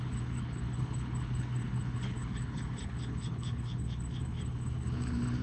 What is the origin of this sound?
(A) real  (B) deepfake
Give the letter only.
B